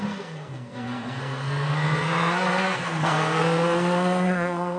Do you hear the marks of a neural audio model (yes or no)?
yes